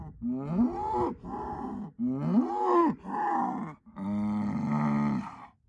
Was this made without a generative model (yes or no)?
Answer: yes